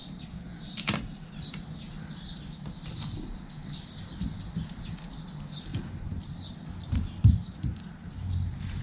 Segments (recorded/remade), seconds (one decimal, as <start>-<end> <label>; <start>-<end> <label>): 0.0-8.8 recorded